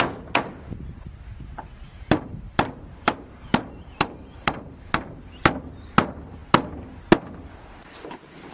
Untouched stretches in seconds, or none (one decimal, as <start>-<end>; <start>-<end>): 0.0-1.7; 5.1-8.5